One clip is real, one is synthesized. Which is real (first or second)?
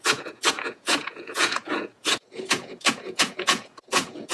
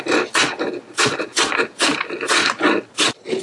second